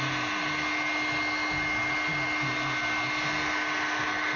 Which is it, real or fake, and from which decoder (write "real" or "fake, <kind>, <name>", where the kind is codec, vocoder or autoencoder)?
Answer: real